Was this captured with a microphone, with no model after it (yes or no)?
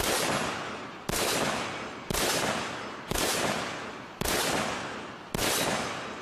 yes